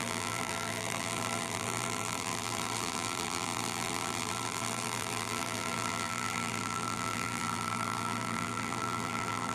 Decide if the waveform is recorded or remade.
remade